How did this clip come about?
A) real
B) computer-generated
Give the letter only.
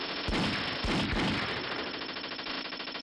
A